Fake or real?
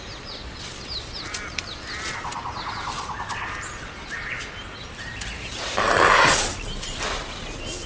real